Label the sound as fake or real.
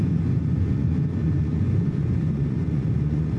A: fake